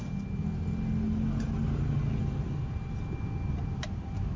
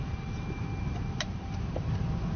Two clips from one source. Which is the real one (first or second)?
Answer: first